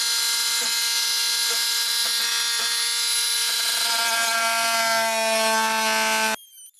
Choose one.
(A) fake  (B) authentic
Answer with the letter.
B